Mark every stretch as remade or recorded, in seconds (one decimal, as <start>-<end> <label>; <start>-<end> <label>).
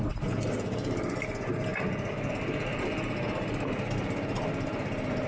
0.0-5.3 recorded